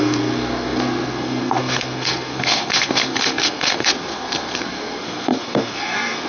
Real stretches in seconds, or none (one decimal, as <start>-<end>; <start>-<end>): none